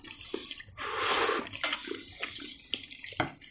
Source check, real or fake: real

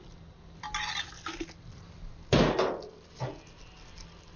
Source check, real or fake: real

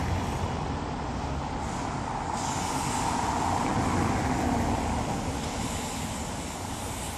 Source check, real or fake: real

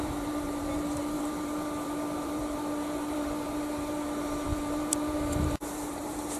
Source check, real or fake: fake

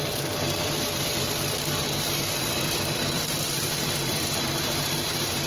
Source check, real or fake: fake